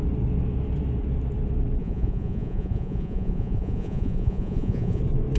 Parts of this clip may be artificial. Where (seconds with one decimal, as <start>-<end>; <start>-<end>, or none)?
1.8-5.0

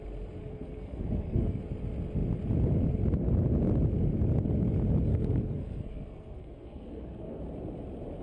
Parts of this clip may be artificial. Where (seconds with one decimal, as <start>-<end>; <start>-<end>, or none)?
0.4-1.6; 5.1-7.4

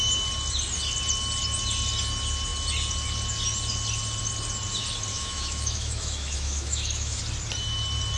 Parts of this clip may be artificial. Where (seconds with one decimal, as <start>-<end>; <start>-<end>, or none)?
5.1-7.2

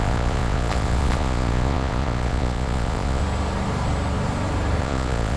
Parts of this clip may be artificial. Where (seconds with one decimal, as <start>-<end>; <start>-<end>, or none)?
0.0-3.2; 4.8-5.4

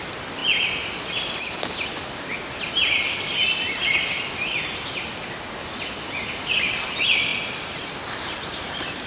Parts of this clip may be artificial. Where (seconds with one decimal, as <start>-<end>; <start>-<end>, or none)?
none

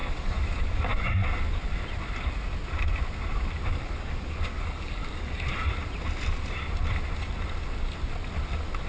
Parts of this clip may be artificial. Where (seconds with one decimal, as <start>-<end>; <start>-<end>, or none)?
0.0-0.8; 3.7-5.3